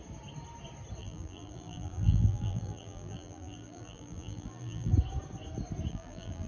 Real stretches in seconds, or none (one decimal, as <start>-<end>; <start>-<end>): 0.0-1.0; 4.9-5.9